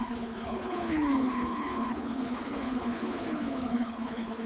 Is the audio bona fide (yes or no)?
no